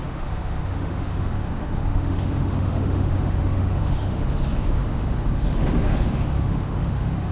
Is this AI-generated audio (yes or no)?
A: yes